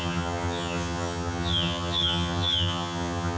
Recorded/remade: remade